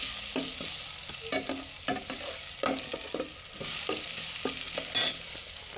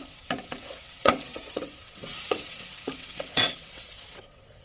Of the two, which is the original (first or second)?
first